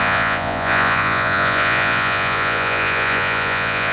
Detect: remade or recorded remade